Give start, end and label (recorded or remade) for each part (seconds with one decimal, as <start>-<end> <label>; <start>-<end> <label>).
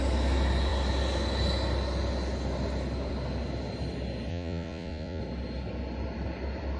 0.0-4.3 recorded; 4.3-5.2 remade; 5.2-6.8 recorded